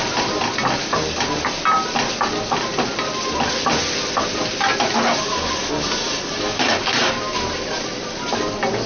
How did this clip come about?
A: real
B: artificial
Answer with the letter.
A